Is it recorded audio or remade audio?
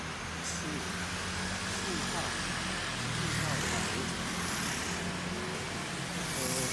recorded